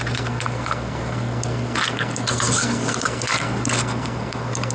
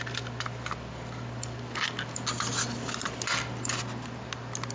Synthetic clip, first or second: first